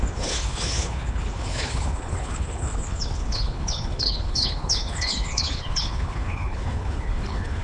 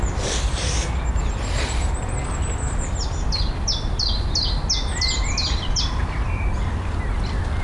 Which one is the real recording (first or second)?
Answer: second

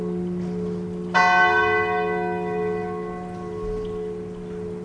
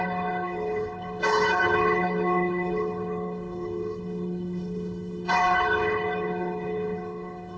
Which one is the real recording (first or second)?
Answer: first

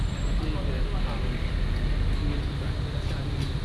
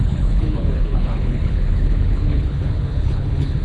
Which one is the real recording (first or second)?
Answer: first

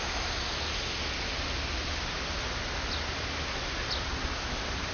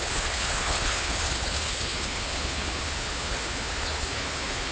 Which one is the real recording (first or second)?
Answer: first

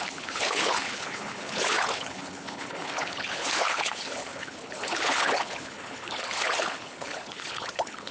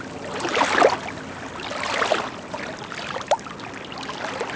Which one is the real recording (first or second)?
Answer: second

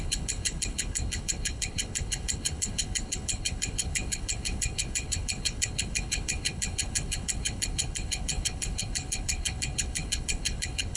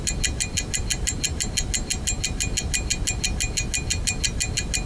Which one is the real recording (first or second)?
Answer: second